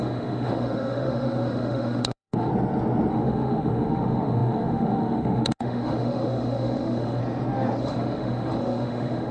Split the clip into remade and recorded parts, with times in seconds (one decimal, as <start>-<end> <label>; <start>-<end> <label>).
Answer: 0.0-2.5 remade; 2.5-3.1 recorded; 3.1-7.2 remade; 7.2-7.8 recorded; 7.8-9.3 remade